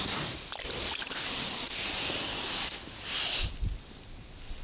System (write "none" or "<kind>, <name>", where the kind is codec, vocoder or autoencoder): none